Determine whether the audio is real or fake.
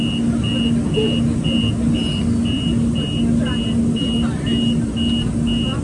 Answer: real